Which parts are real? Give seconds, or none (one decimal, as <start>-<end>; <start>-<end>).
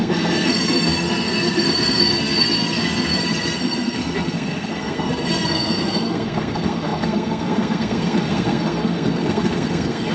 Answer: none